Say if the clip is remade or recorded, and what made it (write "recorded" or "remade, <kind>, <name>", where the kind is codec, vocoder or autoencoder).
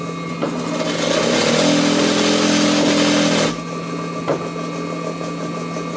recorded